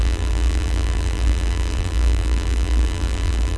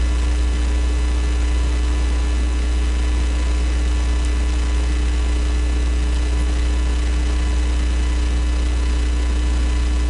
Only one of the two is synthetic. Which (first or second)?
first